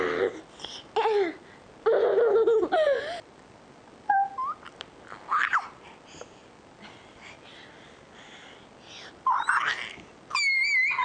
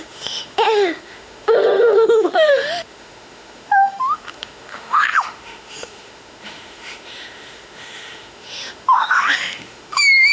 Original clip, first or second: first